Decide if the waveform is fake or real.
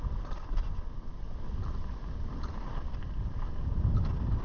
real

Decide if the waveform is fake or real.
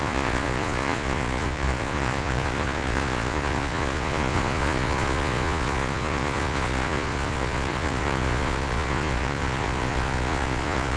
fake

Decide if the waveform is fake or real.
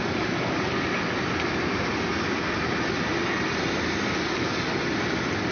real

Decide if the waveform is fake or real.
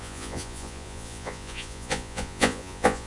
fake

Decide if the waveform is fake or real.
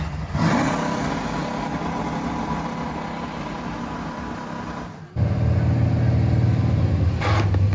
real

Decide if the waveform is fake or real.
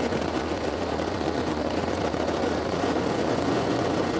fake